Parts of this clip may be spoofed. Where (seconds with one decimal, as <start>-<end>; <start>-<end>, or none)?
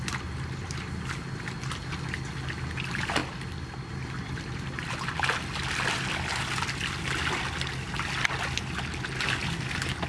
none